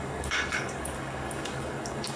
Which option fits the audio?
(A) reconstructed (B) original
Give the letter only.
A